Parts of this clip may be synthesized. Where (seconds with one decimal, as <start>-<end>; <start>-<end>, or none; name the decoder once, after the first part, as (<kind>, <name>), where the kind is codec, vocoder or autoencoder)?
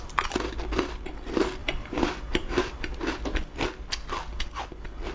1.6-2.8 (vocoder, BigVGAN v2)